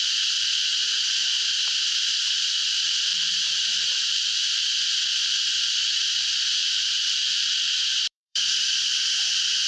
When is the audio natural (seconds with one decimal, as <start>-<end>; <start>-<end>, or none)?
0.0-3.1; 4.6-6.6; 8.4-9.7